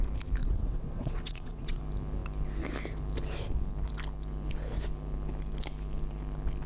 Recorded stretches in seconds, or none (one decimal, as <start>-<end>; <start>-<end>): 0.0-0.4; 1.8-6.7